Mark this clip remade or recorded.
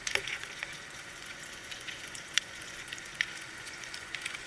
remade